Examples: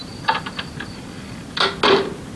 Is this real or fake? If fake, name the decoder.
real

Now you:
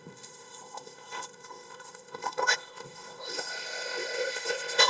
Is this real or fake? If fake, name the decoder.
fake, codec, ZipCodec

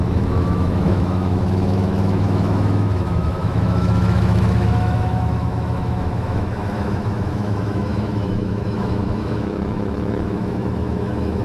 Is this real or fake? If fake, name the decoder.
fake, autoencoder, DAC-VAE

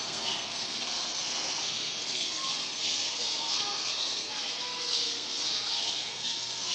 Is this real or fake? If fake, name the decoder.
fake, codec, SNAC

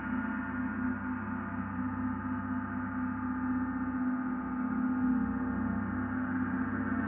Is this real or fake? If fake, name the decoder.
real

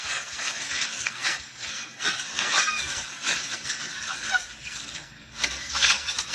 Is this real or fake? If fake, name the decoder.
fake, codec, SNAC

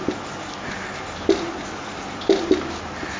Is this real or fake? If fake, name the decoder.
real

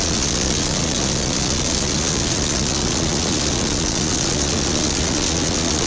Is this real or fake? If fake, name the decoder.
fake, vocoder, Vocos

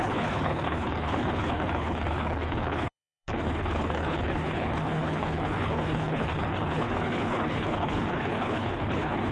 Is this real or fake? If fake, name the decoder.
fake, codec, HILCodec